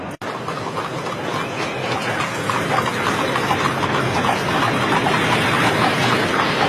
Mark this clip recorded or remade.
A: recorded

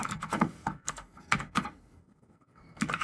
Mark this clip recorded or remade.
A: remade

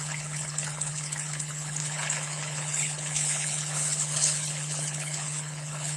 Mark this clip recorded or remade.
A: remade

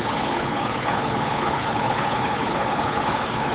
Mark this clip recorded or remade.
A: remade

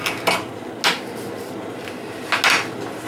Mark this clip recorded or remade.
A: recorded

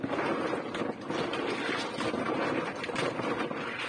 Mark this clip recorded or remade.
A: recorded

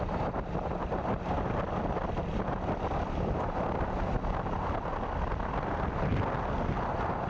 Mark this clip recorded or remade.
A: recorded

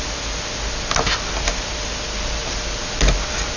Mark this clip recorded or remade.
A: recorded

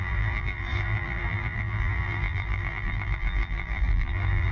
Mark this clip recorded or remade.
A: remade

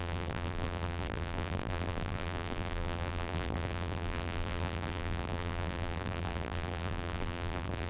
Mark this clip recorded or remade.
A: remade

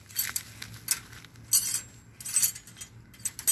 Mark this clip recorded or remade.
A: recorded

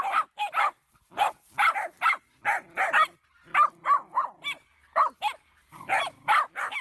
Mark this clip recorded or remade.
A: recorded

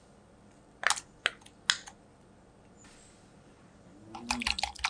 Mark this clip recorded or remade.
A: recorded